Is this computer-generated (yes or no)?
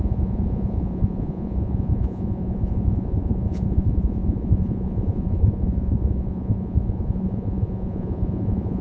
yes